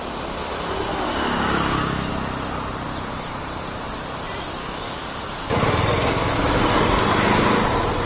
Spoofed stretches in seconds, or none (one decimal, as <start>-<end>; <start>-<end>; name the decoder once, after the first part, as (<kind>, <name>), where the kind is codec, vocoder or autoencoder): 0.9-2.1 (codec, DAC); 4.6-5.2